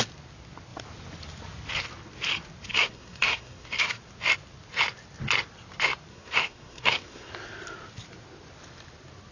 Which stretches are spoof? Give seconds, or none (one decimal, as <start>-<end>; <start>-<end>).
2.7-4.0; 6.1-7.3